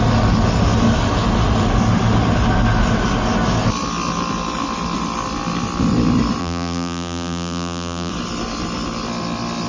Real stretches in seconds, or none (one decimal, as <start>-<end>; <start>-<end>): 0.0-6.4; 8.1-9.7

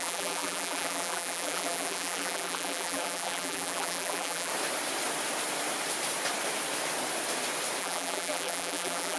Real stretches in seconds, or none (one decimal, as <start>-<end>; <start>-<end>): 4.5-7.8

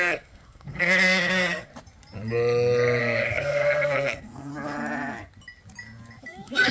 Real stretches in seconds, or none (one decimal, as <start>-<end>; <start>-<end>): 1.7-3.0; 4.5-6.2